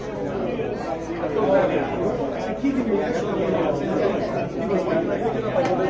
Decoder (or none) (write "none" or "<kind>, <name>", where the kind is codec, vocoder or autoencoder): none